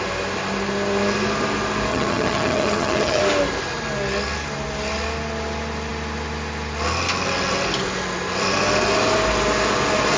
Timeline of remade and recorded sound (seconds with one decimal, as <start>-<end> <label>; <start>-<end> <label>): 0.0-1.9 recorded; 1.9-3.2 remade; 3.2-10.2 recorded